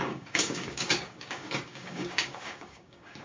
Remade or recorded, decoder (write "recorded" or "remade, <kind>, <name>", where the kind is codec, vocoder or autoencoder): remade, codec, DAC